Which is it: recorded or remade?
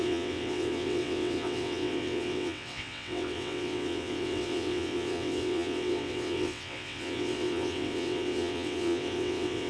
remade